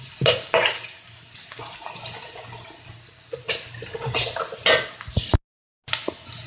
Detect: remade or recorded recorded